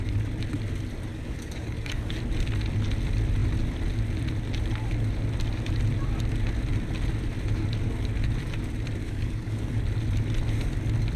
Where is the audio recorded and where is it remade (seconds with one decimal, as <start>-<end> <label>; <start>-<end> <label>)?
0.0-1.1 recorded; 1.1-2.2 remade; 2.2-9.0 recorded; 9.0-9.8 remade; 9.8-11.2 recorded